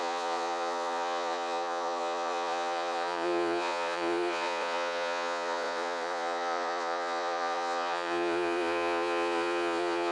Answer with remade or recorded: remade